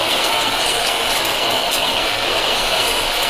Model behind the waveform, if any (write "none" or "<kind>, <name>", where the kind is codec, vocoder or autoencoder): codec, SNAC